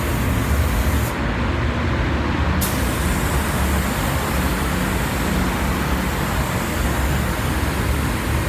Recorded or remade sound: recorded